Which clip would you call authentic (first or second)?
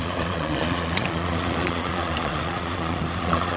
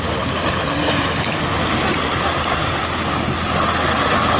second